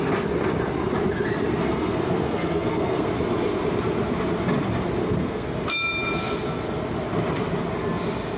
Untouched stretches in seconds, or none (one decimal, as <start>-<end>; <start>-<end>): 0.0-1.6; 3.1-5.0; 5.6-8.4